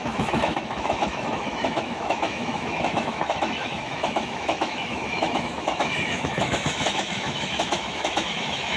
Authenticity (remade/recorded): remade